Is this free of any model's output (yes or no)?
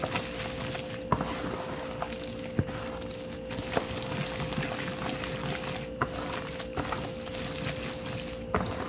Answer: yes